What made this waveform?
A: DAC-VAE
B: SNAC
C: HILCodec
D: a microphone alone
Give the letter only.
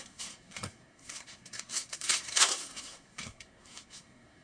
B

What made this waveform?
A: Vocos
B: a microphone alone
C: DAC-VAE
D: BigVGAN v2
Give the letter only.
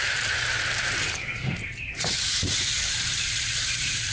D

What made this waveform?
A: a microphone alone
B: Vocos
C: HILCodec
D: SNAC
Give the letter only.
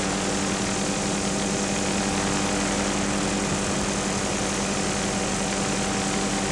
A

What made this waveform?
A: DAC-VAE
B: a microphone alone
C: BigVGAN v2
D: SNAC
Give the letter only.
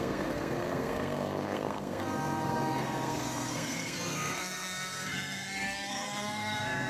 D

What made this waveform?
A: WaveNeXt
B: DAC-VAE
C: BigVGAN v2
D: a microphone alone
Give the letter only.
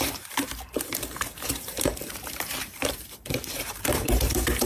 C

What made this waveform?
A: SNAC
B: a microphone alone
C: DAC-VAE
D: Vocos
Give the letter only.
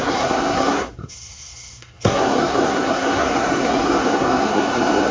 A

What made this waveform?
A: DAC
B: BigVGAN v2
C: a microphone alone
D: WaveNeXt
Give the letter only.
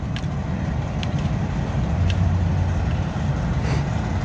C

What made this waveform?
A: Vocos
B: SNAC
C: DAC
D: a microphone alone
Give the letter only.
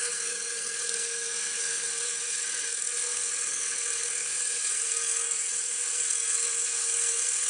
B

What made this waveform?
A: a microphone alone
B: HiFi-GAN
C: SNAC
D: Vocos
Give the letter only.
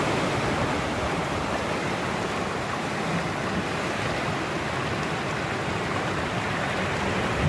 A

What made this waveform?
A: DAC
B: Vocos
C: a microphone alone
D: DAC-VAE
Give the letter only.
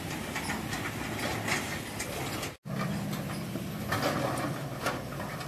C